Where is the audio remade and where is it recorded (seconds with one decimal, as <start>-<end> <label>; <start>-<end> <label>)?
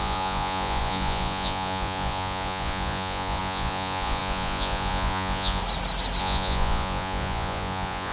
0.0-5.6 remade; 5.6-6.2 recorded; 6.2-8.1 remade